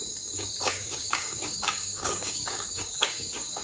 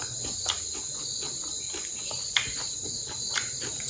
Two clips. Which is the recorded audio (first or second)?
second